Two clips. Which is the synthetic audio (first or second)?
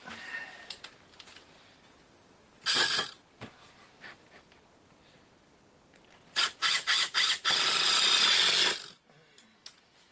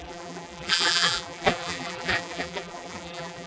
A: second